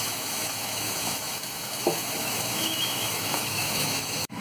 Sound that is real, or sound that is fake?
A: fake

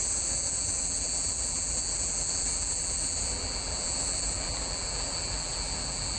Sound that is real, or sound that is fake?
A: fake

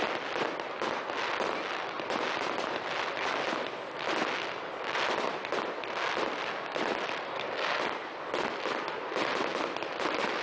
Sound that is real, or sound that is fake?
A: real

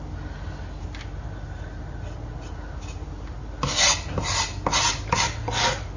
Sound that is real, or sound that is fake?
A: real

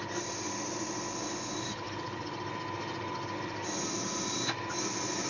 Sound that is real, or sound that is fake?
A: real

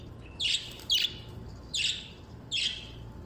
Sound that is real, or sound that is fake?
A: real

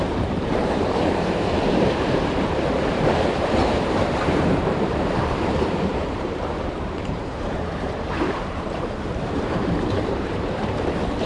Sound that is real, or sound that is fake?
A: fake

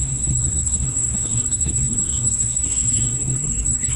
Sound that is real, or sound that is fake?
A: fake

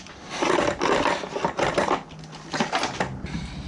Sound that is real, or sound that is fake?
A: real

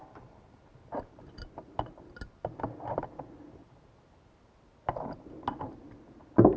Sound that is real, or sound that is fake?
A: real